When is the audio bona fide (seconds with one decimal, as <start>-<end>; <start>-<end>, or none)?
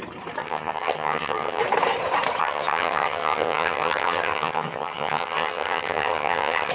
0.0-0.4; 1.6-2.4